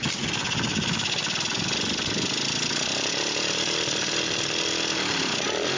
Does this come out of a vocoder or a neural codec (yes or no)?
no